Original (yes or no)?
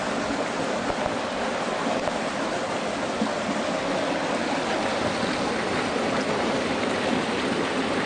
yes